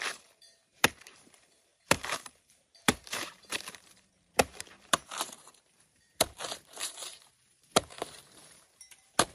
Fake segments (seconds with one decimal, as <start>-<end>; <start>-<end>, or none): 0.0-9.3